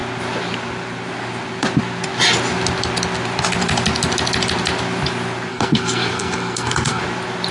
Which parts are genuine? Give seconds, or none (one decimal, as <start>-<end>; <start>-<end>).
0.0-5.5; 7.0-7.5